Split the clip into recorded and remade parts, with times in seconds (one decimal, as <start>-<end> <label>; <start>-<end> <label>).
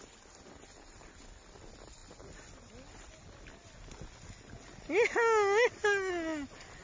0.0-6.8 recorded